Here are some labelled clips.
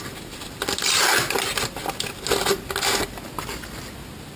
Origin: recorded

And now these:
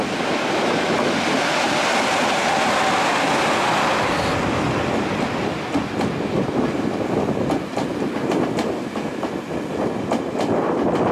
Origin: recorded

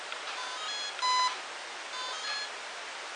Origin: recorded